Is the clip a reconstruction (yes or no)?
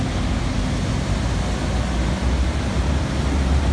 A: no